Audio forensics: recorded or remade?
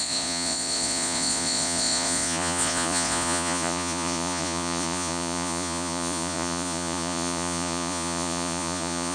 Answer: remade